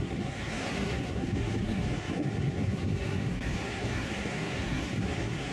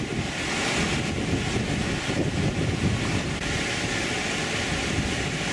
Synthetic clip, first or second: first